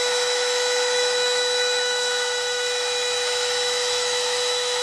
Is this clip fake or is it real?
fake